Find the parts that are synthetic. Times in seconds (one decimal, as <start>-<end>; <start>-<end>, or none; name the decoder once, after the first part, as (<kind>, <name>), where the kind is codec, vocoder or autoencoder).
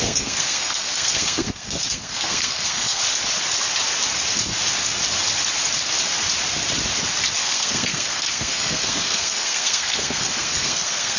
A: 0.0-3.0 (codec, SNAC); 7.4-11.2